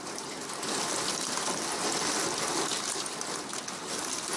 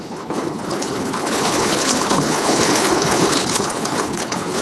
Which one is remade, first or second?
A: second